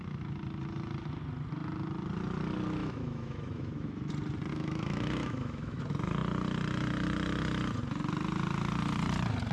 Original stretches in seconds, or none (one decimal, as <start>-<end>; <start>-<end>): 0.0-2.8; 4.1-4.5; 5.8-9.5